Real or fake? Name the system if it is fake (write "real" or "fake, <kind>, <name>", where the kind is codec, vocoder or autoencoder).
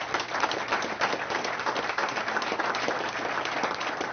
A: real